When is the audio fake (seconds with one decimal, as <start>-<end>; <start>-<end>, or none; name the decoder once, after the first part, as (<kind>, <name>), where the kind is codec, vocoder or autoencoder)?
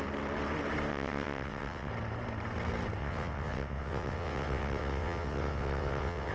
0.9-1.9 (vocoder, WaveNeXt); 3.0-6.3